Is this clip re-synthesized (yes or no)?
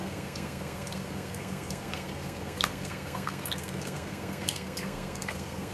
yes